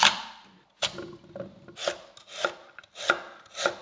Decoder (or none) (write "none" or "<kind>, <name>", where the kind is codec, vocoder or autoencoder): none